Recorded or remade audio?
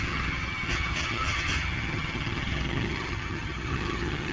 remade